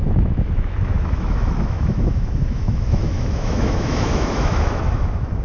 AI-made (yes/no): yes